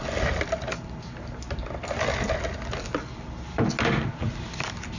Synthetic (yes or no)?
no